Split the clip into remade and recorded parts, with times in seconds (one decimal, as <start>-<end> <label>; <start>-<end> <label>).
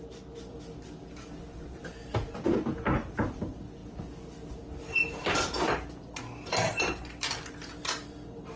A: 0.0-8.6 recorded